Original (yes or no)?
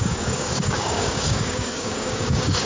no